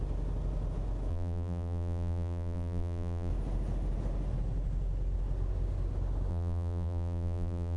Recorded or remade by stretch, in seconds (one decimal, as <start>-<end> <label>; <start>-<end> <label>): 0.0-1.1 recorded; 1.1-3.3 remade; 3.3-6.3 recorded; 6.3-7.8 remade